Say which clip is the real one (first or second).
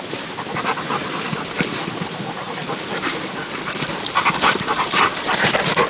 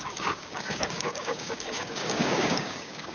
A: first